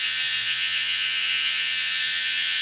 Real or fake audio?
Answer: fake